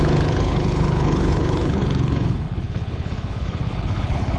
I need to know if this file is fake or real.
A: fake